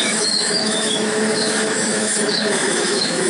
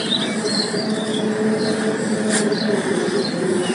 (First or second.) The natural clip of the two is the second